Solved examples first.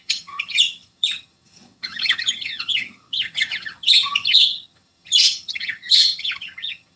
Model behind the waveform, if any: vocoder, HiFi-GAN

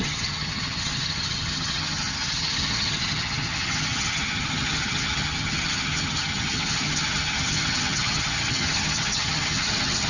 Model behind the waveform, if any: vocoder, HiFi-GAN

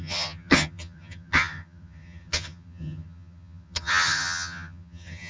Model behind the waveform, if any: vocoder, HiFi-GAN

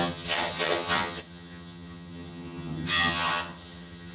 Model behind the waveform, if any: vocoder, HiFi-GAN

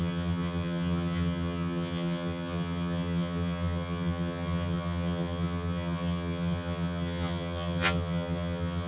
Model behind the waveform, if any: vocoder, HiFi-GAN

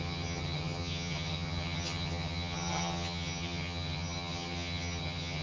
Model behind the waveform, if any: vocoder, HiFi-GAN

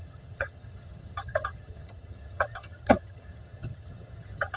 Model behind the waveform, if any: vocoder, HiFi-GAN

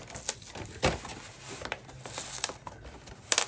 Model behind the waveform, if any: none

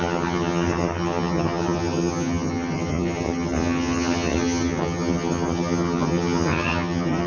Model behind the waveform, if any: vocoder, HiFi-GAN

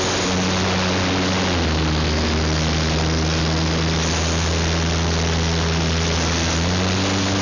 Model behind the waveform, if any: none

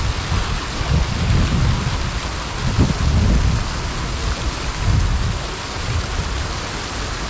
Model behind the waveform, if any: none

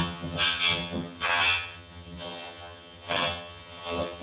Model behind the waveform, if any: vocoder, HiFi-GAN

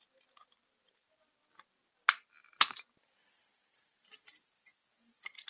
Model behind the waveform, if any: none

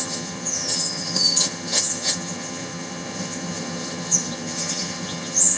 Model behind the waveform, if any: vocoder, HiFi-GAN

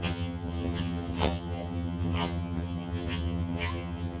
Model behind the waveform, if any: vocoder, HiFi-GAN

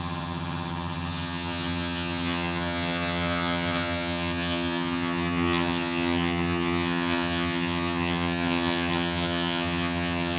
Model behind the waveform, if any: vocoder, HiFi-GAN